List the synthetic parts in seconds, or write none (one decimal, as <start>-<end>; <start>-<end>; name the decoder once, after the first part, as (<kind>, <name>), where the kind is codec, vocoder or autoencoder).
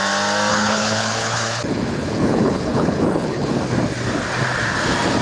0.5-3.6 (codec, HILCodec)